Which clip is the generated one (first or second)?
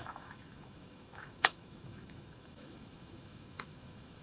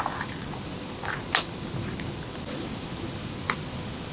first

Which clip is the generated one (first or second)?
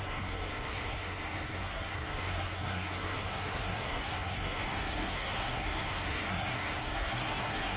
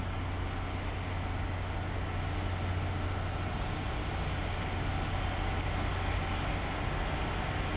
first